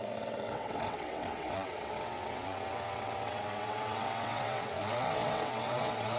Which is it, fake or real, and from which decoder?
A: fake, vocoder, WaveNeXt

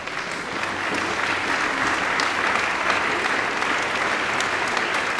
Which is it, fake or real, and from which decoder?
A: real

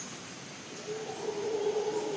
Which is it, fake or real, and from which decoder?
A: real